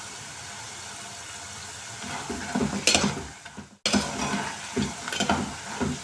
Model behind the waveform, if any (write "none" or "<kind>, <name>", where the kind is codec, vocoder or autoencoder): none